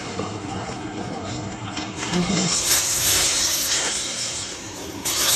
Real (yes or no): no